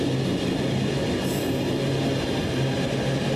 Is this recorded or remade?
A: recorded